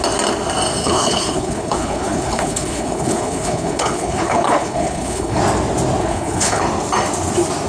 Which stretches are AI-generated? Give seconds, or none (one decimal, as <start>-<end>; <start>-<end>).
0.8-5.4; 6.0-6.6